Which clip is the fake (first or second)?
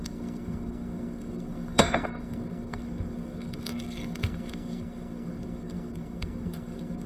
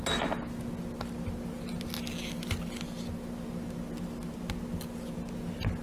first